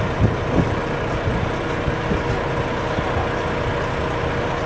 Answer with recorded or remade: recorded